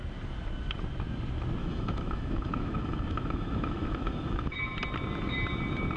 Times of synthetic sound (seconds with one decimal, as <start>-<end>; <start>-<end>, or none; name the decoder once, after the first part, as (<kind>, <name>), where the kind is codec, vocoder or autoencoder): 1.6-4.6 (autoencoder, DAC-VAE)